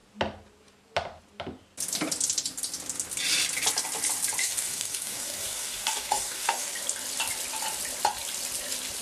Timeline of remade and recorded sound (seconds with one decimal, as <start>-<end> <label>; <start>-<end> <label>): 0.0-4.4 recorded; 4.4-6.7 remade; 6.7-9.0 recorded